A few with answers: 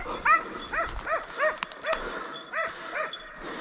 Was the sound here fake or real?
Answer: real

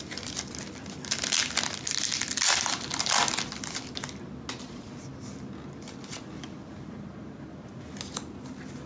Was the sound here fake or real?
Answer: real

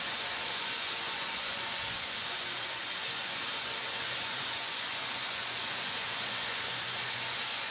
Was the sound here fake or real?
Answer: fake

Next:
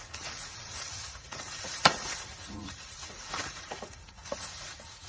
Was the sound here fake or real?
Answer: fake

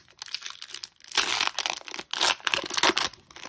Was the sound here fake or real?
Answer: real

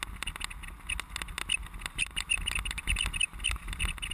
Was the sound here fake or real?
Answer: real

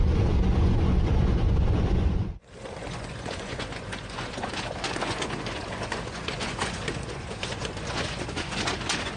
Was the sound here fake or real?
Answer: fake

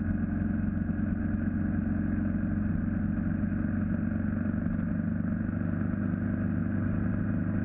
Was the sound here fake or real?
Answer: real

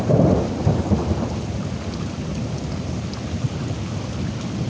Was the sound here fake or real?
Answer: real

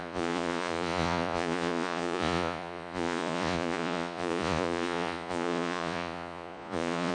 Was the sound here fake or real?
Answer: fake